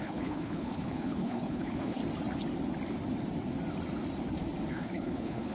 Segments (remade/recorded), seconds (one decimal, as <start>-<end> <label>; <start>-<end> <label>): 0.0-2.0 remade; 2.0-4.7 recorded; 4.7-5.5 remade